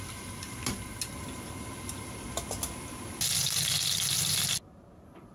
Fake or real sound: real